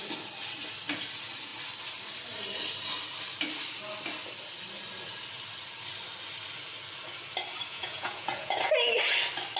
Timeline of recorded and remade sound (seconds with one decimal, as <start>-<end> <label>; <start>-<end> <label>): 0.0-7.7 recorded; 7.7-8.7 remade; 8.7-9.6 recorded